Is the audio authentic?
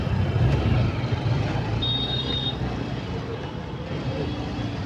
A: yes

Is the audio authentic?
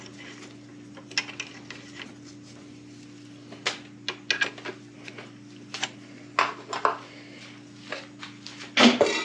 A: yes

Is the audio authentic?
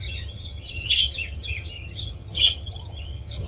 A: no